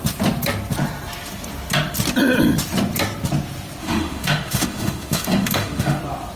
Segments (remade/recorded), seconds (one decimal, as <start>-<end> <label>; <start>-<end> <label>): 0.0-3.8 recorded; 3.8-6.0 remade; 6.0-6.4 recorded